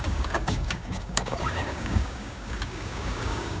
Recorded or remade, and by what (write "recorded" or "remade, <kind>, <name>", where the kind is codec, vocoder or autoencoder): remade, codec, DAC